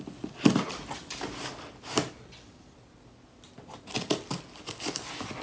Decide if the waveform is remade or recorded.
recorded